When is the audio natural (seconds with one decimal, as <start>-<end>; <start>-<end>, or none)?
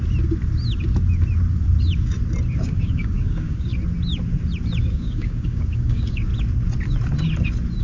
0.0-2.6; 3.7-4.9; 6.3-7.8